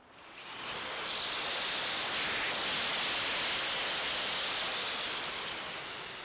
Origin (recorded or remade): recorded